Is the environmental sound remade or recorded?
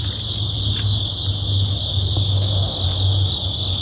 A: recorded